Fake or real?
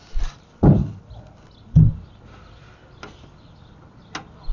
real